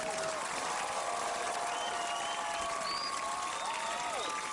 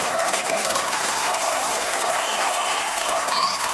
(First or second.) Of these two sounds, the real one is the first